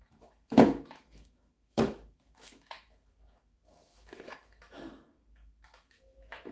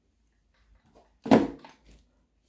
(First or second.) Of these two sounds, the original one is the second